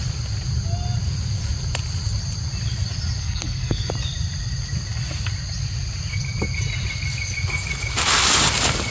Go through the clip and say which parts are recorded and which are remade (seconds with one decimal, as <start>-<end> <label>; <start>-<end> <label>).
0.0-3.2 recorded; 3.2-3.9 remade; 3.9-8.9 recorded